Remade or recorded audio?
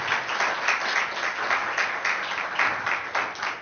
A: recorded